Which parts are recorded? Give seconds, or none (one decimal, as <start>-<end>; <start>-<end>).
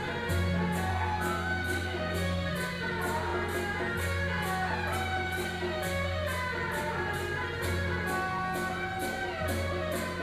0.0-0.9; 2.5-10.2